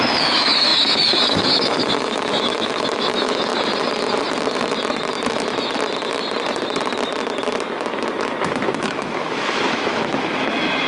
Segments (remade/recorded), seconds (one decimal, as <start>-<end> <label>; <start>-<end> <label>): 0.0-3.5 remade; 3.5-8.4 recorded; 8.4-10.9 remade